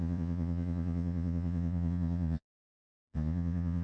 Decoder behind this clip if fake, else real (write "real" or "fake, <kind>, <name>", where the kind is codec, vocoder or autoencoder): fake, vocoder, Vocos